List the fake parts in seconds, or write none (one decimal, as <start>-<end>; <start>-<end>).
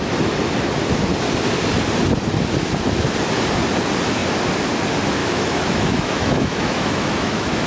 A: 5.2-7.7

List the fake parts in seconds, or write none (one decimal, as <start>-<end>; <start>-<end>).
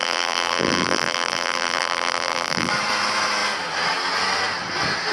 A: 0.0-2.7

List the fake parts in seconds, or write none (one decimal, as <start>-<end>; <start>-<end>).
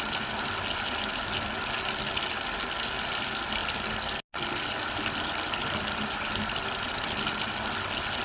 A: none